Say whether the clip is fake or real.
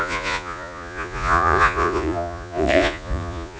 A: fake